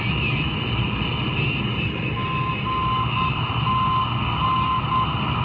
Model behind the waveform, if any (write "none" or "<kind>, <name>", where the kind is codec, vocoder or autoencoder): none